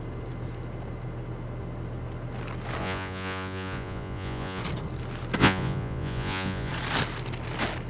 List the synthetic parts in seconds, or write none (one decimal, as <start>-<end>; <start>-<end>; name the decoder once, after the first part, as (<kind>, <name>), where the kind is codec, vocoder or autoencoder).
2.8-4.6 (vocoder, Vocos); 5.4-6.7